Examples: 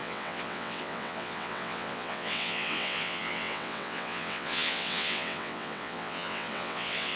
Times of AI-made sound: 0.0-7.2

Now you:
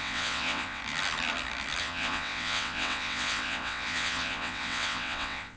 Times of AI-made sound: 0.0-0.8; 1.8-5.6

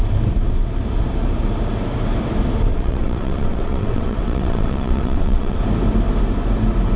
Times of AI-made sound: 2.7-5.6